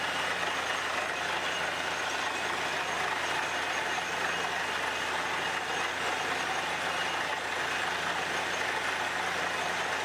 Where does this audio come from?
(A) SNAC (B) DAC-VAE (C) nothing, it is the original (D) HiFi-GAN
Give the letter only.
C